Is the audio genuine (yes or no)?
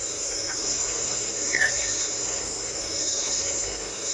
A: no